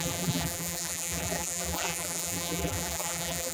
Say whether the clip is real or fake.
fake